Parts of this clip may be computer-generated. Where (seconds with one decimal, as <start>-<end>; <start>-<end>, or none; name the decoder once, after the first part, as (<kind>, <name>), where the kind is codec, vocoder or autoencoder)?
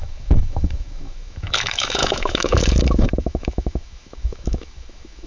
0.0-5.3 (autoencoder, DAC-VAE)